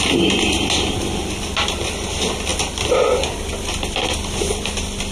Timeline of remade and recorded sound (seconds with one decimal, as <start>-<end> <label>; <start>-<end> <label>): 0.0-5.1 recorded